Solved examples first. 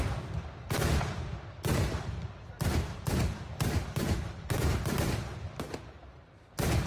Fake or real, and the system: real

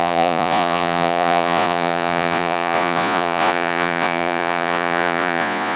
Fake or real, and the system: fake, vocoder, Vocos